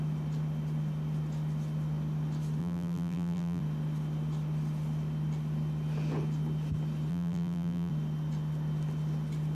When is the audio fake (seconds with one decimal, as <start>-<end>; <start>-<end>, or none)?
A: 2.6-3.6; 7.1-7.9